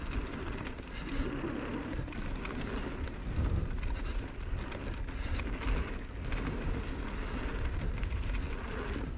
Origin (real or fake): real